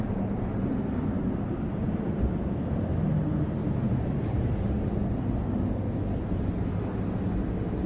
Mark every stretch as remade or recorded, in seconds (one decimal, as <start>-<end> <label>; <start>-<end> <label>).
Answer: 0.0-3.6 recorded; 3.6-5.4 remade; 5.4-7.9 recorded